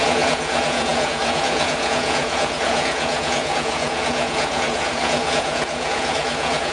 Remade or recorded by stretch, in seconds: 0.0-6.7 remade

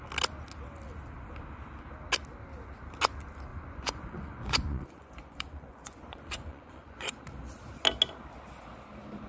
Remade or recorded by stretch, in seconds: 0.0-3.5 recorded; 3.5-7.2 remade; 7.2-9.3 recorded

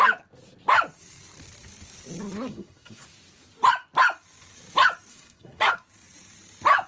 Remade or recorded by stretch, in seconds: 0.0-2.5 recorded; 2.5-3.0 remade; 3.0-5.1 recorded; 5.1-5.7 remade; 5.7-6.9 recorded

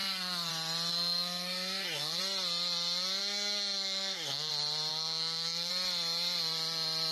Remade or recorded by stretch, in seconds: 0.0-0.5 remade; 0.5-0.9 recorded; 0.9-2.2 remade; 2.2-3.2 recorded; 3.2-4.5 remade; 4.5-4.9 recorded; 4.9-5.7 remade; 5.7-7.1 recorded

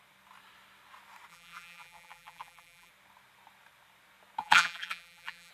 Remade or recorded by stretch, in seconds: 0.0-1.3 recorded; 1.3-2.9 remade; 2.9-4.4 recorded; 4.4-5.5 remade

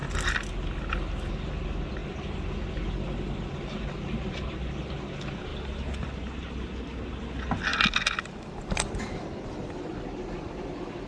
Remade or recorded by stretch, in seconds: 0.0-11.1 recorded

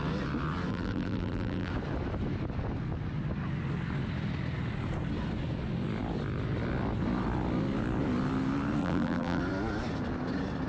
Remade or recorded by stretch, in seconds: 0.0-0.7 recorded; 0.7-1.7 remade; 1.7-8.8 recorded; 8.8-9.4 remade; 9.4-10.7 recorded

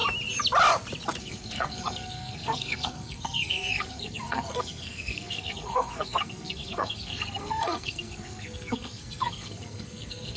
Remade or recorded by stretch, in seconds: 0.0-1.2 recorded; 1.2-10.4 remade